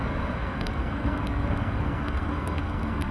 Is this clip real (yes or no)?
no